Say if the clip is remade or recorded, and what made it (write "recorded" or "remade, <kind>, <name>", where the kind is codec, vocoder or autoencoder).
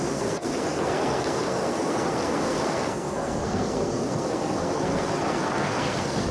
remade, codec, SNAC